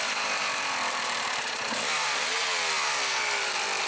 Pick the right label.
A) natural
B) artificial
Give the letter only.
A